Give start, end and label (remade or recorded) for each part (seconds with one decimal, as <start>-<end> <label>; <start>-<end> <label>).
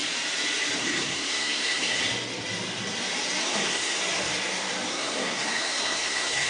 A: 0.0-0.8 recorded; 0.8-2.0 remade; 2.0-3.4 recorded; 3.4-4.0 remade; 4.0-4.9 recorded; 4.9-6.5 remade